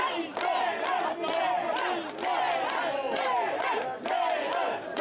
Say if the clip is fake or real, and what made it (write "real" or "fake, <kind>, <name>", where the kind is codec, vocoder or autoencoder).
real